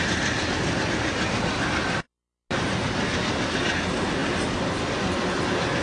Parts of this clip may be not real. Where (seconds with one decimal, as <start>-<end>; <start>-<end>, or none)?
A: none